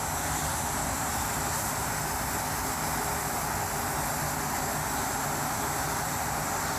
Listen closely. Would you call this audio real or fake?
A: real